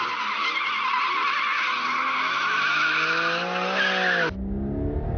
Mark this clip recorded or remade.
recorded